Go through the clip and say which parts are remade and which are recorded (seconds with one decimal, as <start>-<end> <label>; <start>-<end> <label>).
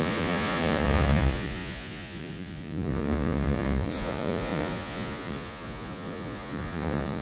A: 0.0-7.2 remade